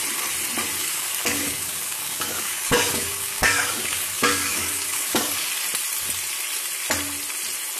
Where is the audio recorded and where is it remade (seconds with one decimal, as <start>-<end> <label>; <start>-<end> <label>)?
0.0-0.8 recorded; 0.8-5.5 remade; 5.5-7.8 recorded